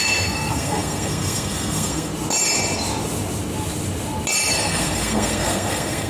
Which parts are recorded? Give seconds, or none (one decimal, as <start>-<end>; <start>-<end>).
2.1-4.5

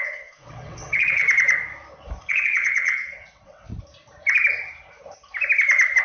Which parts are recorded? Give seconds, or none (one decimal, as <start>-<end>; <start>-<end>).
1.2-2.3; 3.7-6.0

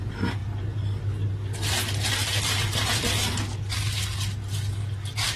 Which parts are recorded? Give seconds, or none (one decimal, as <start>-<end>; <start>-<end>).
0.0-5.4

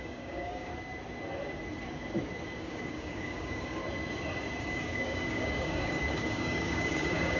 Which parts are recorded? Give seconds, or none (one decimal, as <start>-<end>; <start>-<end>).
0.7-2.6; 3.8-4.6

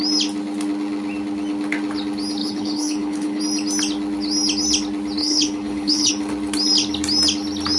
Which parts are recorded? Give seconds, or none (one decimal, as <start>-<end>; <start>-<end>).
0.0-2.4; 3.4-5.2; 6.1-7.8

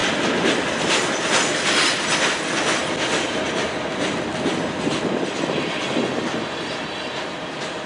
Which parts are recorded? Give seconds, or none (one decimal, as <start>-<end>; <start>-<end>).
0.0-7.9

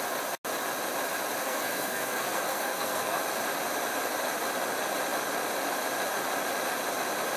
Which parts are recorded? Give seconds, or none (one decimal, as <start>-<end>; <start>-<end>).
0.0-1.4; 3.2-7.4

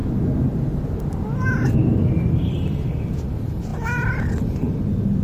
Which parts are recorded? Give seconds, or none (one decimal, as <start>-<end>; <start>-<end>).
0.0-5.2